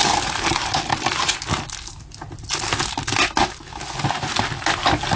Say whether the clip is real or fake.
real